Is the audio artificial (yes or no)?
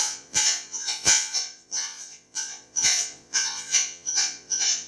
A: yes